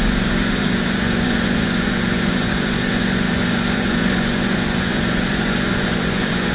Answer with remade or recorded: remade